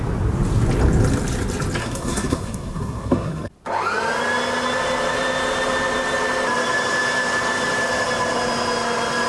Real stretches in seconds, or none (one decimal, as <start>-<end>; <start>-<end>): 0.0-1.8; 3.5-9.3